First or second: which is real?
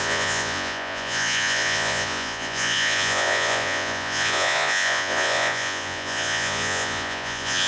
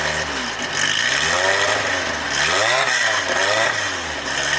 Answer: second